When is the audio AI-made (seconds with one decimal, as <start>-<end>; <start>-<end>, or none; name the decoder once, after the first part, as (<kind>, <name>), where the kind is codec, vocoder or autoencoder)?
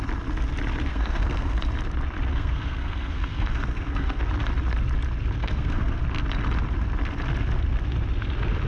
0.9-1.6 (codec, SNAC); 2.3-4.2; 5.4-6.0